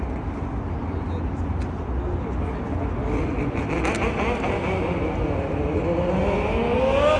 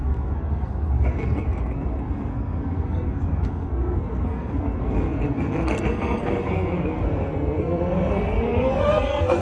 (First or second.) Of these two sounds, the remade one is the second